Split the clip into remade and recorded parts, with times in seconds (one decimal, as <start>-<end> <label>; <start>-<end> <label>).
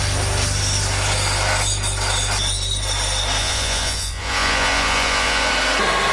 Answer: 0.0-3.4 recorded; 3.4-5.5 remade; 5.5-6.1 recorded